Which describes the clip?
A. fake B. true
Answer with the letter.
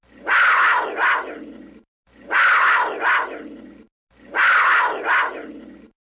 B